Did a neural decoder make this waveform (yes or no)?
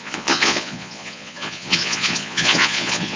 yes